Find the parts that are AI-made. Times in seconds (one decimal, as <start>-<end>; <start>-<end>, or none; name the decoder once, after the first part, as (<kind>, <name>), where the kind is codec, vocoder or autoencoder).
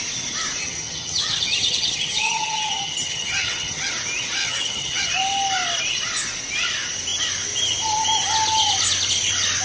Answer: 0.6-3.9 (vocoder, HiFi-GAN); 4.4-5.1